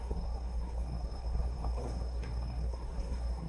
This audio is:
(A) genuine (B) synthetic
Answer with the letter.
B